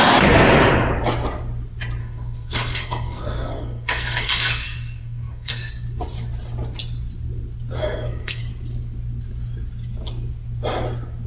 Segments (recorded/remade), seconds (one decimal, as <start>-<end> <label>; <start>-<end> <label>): 0.0-2.0 recorded; 2.0-5.7 remade; 5.7-7.8 recorded; 7.8-8.4 remade; 8.4-11.3 recorded